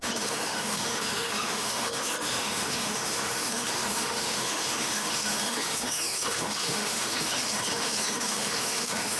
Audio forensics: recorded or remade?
remade